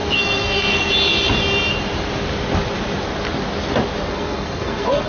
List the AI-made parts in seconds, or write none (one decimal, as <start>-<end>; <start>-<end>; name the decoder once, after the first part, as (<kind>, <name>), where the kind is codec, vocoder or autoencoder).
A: 0.0-0.9 (codec, SNAC); 4.1-5.1